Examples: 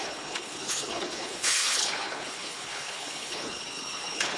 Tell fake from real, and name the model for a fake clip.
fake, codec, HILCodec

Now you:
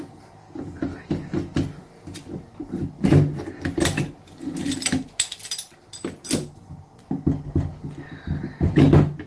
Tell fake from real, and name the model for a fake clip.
real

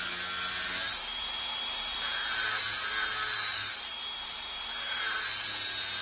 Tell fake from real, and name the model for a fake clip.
real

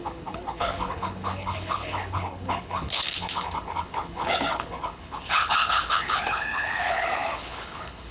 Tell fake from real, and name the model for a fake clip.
fake, codec, HILCodec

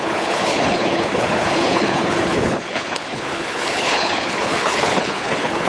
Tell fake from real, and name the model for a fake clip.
fake, codec, HILCodec